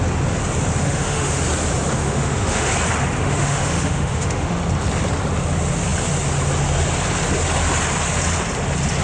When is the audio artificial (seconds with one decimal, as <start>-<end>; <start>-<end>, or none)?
0.8-1.4; 1.9-2.7; 3.2-4.6